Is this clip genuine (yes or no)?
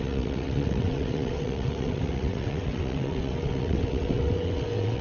no